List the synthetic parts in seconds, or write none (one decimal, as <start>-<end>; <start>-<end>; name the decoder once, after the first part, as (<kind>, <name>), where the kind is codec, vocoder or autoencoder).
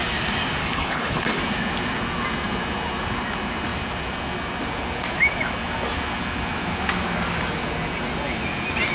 0.6-1.4 (codec, HILCodec)